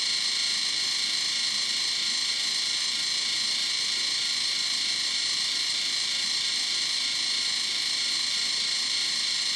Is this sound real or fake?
real